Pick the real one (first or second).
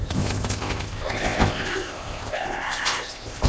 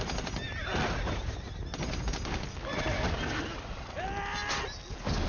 second